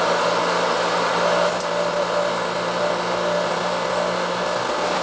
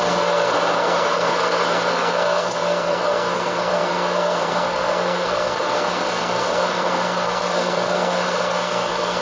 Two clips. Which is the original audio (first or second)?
first